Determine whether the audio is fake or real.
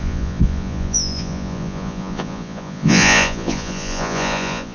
fake